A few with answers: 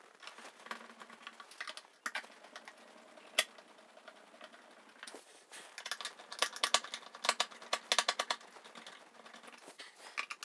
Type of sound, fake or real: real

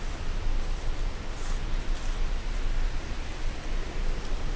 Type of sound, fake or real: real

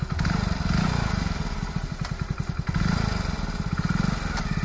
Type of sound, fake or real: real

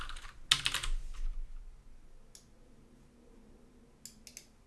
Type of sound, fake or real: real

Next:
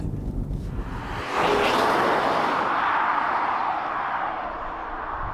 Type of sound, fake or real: real